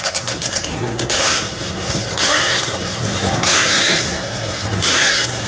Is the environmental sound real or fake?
fake